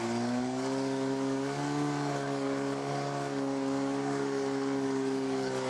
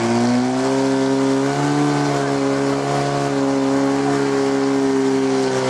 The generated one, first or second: first